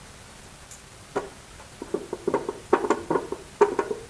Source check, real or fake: real